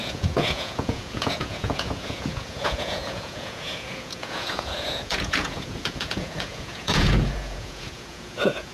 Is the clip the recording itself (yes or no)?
no